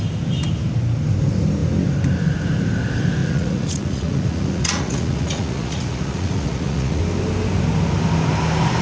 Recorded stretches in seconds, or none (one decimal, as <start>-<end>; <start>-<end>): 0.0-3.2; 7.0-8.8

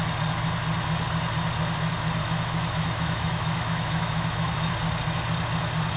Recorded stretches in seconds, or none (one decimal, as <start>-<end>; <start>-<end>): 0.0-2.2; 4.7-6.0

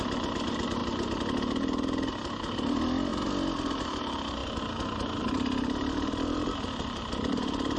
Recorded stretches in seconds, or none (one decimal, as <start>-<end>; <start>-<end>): 0.8-2.5; 3.1-3.7; 4.4-5.2